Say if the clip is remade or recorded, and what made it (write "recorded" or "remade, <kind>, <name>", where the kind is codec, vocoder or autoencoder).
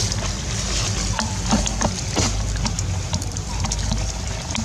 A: recorded